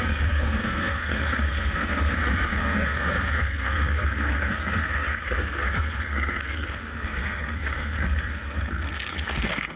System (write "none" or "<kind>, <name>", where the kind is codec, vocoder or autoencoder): codec, SNAC